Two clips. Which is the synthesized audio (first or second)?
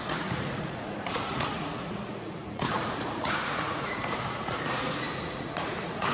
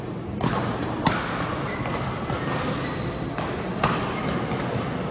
first